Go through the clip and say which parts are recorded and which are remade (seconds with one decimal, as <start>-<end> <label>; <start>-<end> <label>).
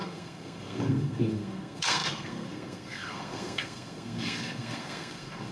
0.0-5.5 remade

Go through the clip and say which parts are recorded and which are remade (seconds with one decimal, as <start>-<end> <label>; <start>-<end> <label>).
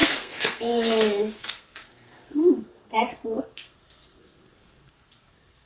0.0-5.7 remade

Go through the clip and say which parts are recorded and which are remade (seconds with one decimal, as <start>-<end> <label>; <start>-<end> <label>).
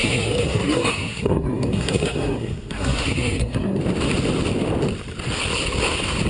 0.0-3.8 remade; 3.8-6.3 recorded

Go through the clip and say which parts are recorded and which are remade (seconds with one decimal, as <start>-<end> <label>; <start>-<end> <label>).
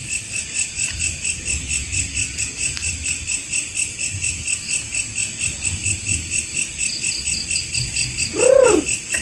0.0-9.2 recorded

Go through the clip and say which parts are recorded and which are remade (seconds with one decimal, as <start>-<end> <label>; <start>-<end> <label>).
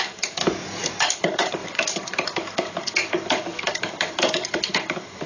0.0-0.4 remade; 0.4-1.0 recorded; 1.0-5.3 remade